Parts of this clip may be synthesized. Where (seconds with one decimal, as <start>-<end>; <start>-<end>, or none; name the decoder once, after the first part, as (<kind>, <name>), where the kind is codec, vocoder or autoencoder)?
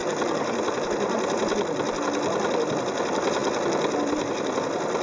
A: 0.0-3.0 (vocoder, BigVGAN v2); 3.4-4.5